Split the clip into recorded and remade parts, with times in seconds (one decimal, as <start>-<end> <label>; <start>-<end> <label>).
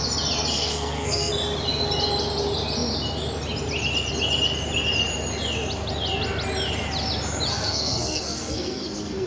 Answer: 0.0-0.5 recorded; 0.5-1.3 remade; 1.3-7.5 recorded; 7.5-9.3 remade